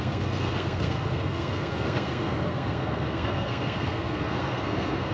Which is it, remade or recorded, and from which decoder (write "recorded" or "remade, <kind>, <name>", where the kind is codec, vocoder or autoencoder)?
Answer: remade, codec, SNAC